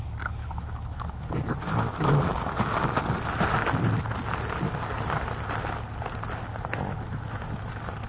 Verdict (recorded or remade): recorded